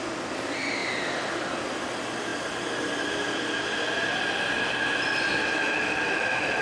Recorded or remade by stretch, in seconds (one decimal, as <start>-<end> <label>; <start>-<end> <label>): 0.0-5.4 recorded; 5.4-6.6 remade